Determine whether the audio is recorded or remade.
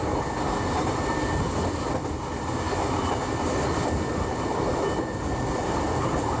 recorded